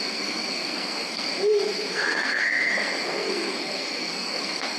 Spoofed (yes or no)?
yes